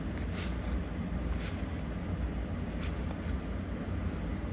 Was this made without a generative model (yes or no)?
yes